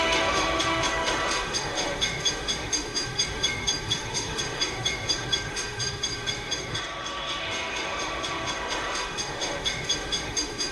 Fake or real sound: fake